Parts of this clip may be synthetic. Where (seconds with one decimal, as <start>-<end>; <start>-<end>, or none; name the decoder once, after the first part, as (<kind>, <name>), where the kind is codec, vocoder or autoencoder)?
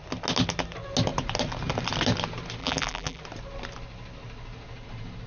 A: 2.6-3.2 (vocoder, BigVGAN v2)